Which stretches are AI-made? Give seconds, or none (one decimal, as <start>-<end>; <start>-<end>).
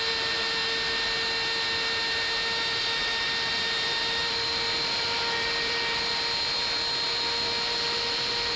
0.0-0.6; 2.8-8.6